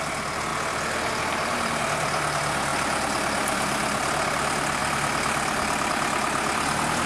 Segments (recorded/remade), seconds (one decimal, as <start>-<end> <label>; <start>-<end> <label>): 0.0-0.5 remade; 0.5-1.1 recorded; 1.1-7.1 remade